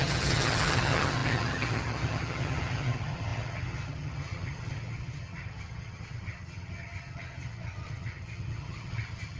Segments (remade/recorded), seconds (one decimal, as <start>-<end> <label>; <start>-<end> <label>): 0.0-9.4 remade